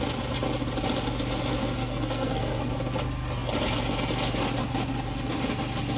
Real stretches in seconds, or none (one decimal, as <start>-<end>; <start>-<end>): 0.0-1.6; 2.7-6.0